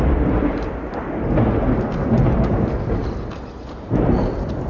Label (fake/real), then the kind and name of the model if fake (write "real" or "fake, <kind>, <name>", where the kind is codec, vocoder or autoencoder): real